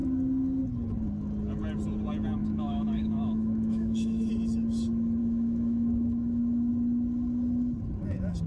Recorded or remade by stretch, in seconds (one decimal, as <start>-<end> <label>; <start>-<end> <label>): 0.0-2.4 recorded; 2.4-4.3 remade; 4.3-5.2 recorded; 5.2-6.7 remade; 6.7-8.5 recorded